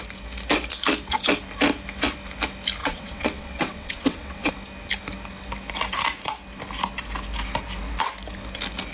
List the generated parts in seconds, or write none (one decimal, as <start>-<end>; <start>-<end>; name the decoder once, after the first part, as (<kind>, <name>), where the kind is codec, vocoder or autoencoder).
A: 2.8-4.5 (vocoder, WaveNeXt)